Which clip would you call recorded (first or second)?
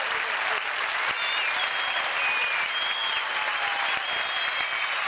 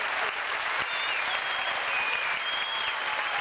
first